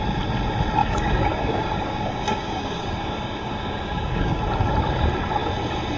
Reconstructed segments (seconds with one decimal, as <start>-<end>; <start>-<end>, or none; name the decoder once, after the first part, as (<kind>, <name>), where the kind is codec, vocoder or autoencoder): 0.8-4.4 (codec, DAC)